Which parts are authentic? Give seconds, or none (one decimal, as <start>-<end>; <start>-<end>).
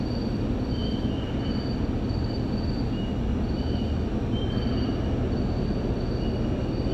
0.0-6.9